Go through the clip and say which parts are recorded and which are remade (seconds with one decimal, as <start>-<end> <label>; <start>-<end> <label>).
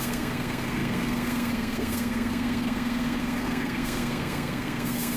0.0-5.2 remade